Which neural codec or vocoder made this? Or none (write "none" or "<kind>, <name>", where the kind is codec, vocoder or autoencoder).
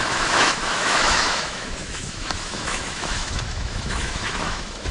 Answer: autoencoder, DAC-VAE